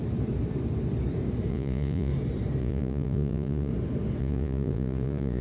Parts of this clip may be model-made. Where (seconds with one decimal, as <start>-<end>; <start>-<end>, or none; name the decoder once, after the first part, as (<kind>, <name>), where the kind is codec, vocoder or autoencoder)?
1.5-2.1 (vocoder, Vocos); 2.6-3.7; 4.2-5.4